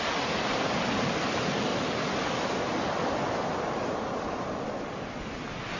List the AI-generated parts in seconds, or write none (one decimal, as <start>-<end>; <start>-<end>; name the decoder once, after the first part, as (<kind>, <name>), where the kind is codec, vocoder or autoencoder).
none